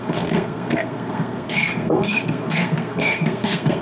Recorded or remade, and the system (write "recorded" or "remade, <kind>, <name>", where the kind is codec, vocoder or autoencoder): remade, codec, SNAC